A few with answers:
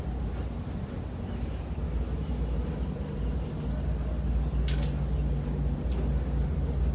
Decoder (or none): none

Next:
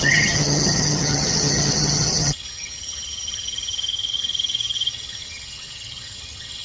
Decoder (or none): vocoder, HiFi-GAN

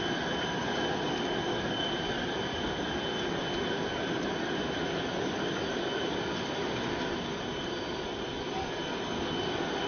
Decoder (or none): none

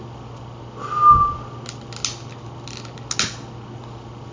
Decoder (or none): none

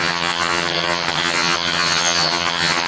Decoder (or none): vocoder, HiFi-GAN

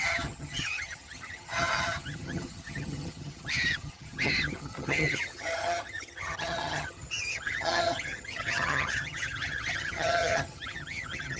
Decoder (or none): vocoder, HiFi-GAN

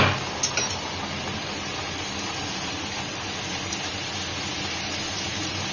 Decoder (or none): none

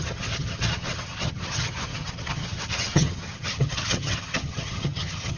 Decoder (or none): vocoder, HiFi-GAN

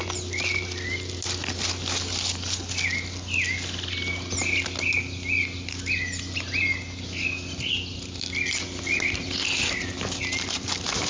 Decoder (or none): none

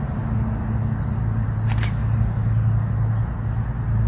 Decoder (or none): none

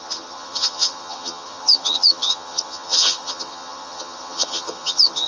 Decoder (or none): vocoder, HiFi-GAN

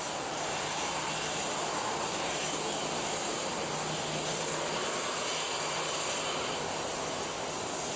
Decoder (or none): none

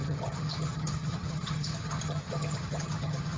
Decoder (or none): vocoder, HiFi-GAN